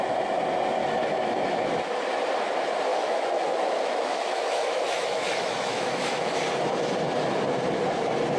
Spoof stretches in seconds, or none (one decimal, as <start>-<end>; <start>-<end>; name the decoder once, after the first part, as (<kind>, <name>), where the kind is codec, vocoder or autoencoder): 0.8-2.0 (autoencoder, DAC-VAE); 2.9-6.3